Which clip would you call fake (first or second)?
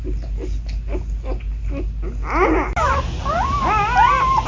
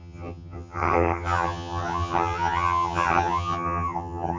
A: second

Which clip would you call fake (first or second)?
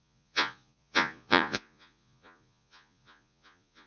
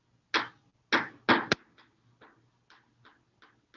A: first